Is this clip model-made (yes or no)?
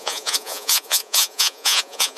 yes